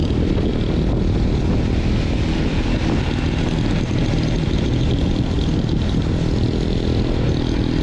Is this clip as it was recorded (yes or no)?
yes